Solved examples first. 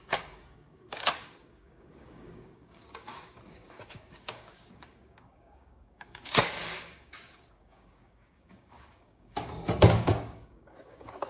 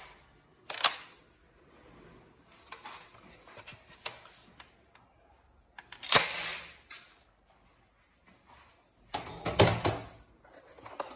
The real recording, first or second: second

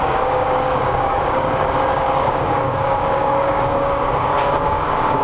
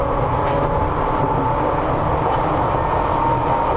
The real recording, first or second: second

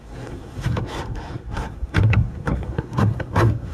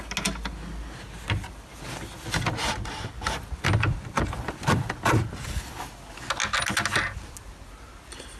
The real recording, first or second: second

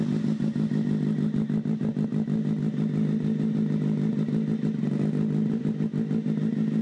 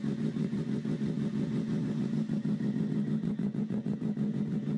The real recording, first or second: first